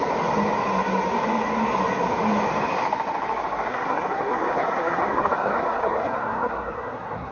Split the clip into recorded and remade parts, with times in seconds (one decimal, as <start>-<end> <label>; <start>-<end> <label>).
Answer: 0.0-3.7 recorded; 3.7-7.3 remade